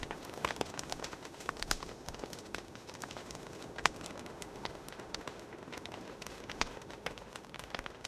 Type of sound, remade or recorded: remade